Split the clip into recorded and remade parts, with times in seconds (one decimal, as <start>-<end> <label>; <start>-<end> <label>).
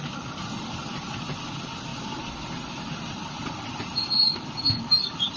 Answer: 0.0-5.4 recorded